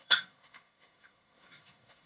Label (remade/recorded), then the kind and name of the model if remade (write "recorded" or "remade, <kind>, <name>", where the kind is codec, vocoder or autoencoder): remade, codec, SNAC